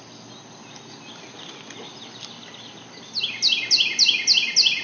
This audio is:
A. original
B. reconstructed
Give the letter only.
A